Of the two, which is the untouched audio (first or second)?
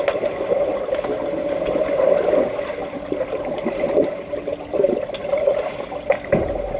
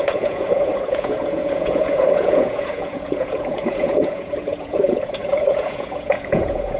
first